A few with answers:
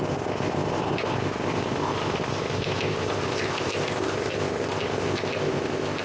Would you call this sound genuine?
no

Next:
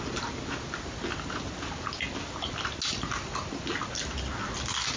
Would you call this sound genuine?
yes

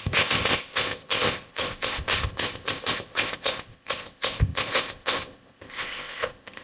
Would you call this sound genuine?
no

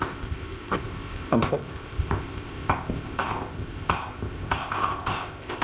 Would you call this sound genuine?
no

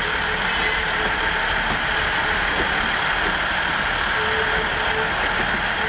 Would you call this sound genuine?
yes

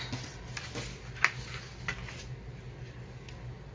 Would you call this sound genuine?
yes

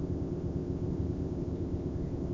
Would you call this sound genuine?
no